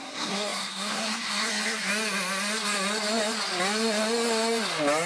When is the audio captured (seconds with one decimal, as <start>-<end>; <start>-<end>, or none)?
1.9-5.1